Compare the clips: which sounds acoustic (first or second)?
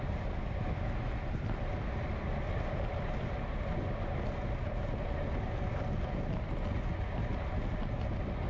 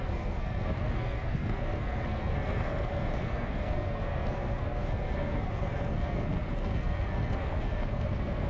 first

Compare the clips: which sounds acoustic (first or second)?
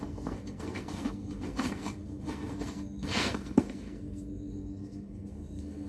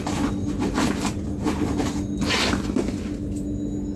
second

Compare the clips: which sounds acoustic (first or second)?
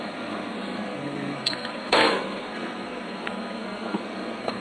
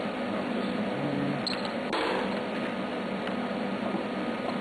second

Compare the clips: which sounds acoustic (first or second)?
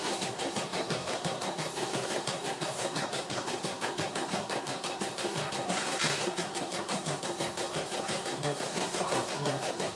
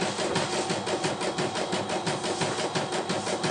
second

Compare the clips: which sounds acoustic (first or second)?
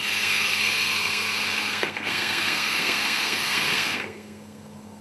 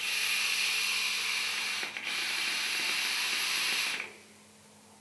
second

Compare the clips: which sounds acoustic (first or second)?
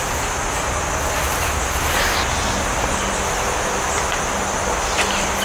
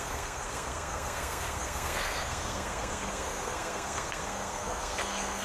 first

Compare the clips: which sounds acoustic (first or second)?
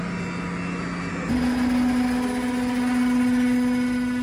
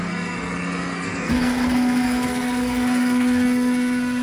first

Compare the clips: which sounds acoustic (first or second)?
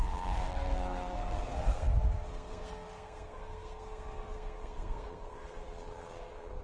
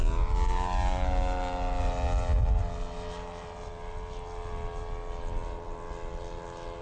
second